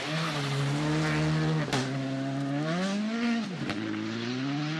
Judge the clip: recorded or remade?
recorded